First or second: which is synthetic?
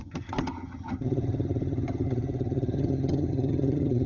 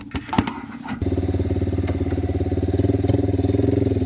first